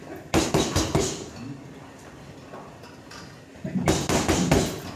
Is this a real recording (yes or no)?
yes